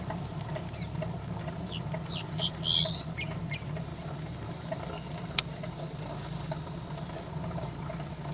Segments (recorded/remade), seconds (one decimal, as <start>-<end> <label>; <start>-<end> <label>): 0.0-8.3 recorded